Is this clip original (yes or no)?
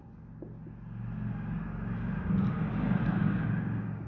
yes